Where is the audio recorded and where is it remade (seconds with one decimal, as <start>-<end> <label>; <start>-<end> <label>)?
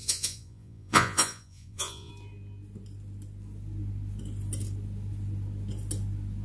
0.0-2.1 remade; 2.1-6.4 recorded